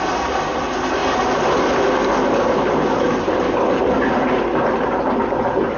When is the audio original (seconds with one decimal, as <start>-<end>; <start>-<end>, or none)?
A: 0.0-5.8